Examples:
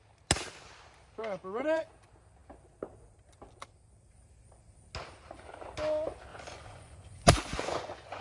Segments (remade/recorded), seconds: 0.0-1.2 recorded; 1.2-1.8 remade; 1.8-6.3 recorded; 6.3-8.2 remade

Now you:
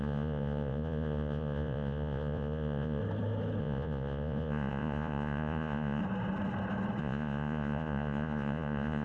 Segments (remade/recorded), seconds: 0.0-3.0 remade; 3.0-3.6 recorded; 3.6-6.0 remade; 6.0-7.0 recorded; 7.0-9.0 remade

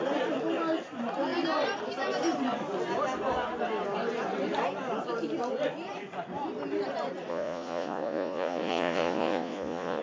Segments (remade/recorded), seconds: 0.0-7.3 recorded; 7.3-10.0 remade

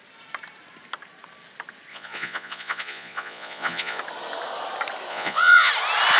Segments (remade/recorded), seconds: 0.0-1.9 recorded; 1.9-4.0 remade; 4.0-5.1 recorded; 5.1-5.7 remade; 5.7-6.2 recorded